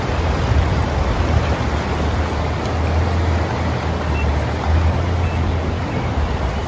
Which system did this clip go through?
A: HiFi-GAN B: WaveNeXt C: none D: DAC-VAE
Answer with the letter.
C